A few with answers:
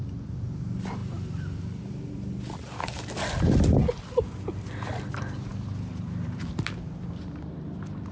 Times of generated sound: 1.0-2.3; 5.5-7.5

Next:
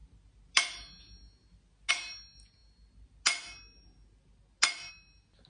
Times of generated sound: none

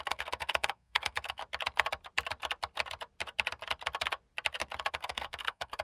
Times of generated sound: 0.0-1.4; 4.9-5.8

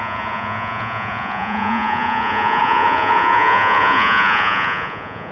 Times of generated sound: 0.0-5.3

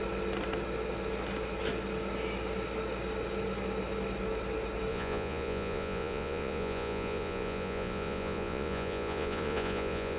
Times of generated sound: 4.9-10.2

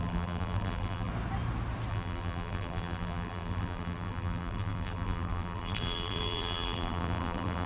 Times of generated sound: 0.0-1.1; 1.9-7.7